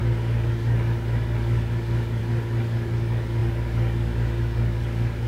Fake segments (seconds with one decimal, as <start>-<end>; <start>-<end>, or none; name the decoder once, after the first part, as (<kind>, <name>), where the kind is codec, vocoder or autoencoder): 0.0-5.3 (codec, DAC)